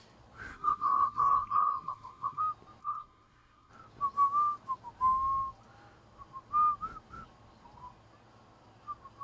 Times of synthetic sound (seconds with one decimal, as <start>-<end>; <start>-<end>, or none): 0.5-2.4; 2.8-3.7